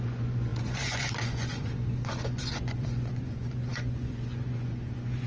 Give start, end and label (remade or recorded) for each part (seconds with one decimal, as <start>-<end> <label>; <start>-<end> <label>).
0.0-5.3 remade